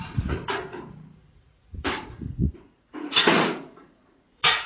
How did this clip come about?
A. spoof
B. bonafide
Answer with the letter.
A